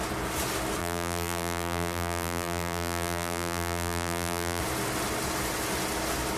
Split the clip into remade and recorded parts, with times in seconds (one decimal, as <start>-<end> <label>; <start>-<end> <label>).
0.0-0.8 recorded; 0.8-4.6 remade; 4.6-6.4 recorded

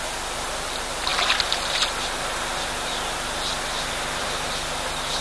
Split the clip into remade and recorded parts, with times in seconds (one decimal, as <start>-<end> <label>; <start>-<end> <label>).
0.0-5.2 recorded

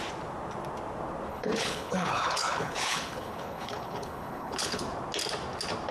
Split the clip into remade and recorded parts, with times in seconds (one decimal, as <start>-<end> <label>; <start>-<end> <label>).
0.0-1.3 recorded; 1.3-4.8 remade; 4.8-5.9 recorded